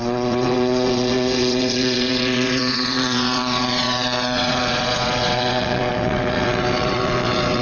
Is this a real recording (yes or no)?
no